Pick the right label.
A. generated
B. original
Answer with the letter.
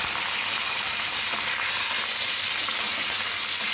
B